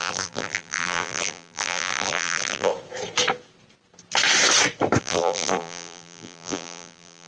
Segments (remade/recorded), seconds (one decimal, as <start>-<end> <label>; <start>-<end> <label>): 0.0-2.7 remade; 2.7-5.0 recorded; 5.0-7.3 remade